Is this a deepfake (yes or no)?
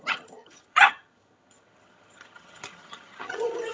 yes